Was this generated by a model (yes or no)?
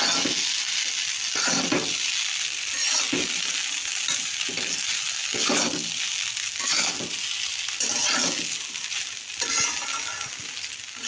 no